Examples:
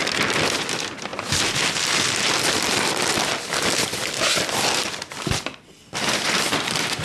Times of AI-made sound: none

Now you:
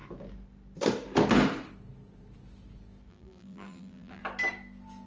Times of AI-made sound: 3.1-4.2 (vocoder, BigVGAN v2)

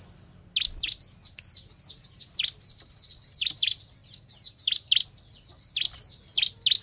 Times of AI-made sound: none

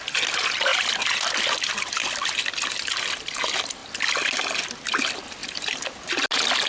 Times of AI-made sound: 5.4-6.1 (vocoder, BigVGAN v2)

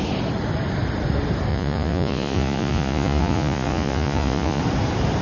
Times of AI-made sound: 1.5-4.6 (vocoder, Vocos)

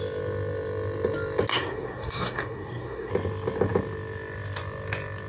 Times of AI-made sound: 1.5-3.1 (codec, SNAC)

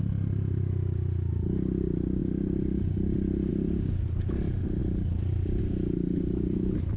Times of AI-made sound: none